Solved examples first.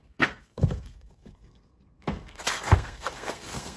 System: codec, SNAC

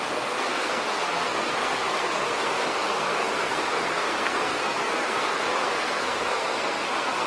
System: codec, SNAC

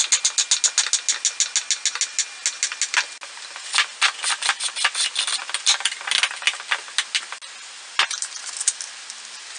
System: none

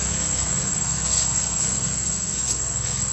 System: codec, SNAC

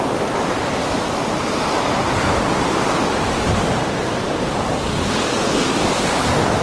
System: none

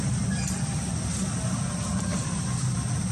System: none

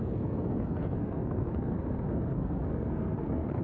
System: codec, SNAC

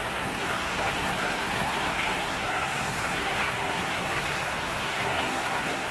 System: codec, SNAC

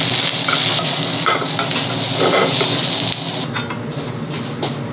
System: none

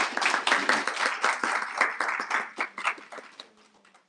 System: none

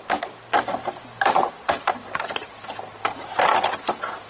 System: none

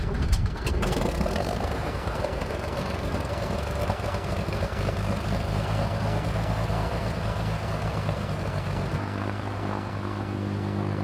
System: codec, SNAC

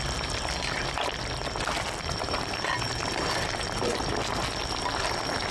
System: none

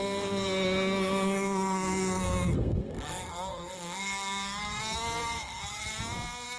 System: codec, SNAC